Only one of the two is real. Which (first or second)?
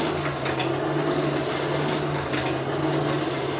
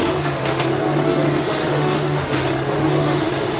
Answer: first